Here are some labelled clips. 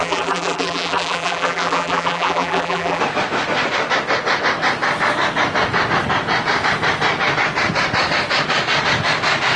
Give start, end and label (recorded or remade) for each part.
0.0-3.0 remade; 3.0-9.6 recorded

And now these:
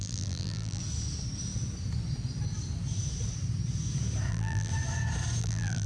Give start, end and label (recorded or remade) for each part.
0.0-0.8 remade; 0.8-4.3 recorded; 4.3-4.7 remade; 4.7-5.4 recorded; 5.4-5.9 remade

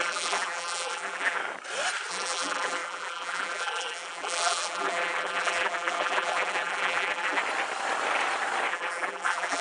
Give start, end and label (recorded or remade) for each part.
0.0-1.4 remade; 1.4-2.1 recorded; 2.1-7.4 remade; 7.4-8.7 recorded; 8.7-9.6 remade

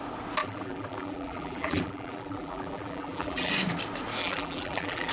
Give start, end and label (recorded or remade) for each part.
0.0-0.4 recorded; 0.4-3.5 remade; 3.5-4.2 recorded; 4.2-5.1 remade